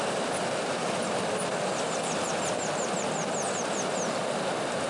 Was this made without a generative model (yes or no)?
yes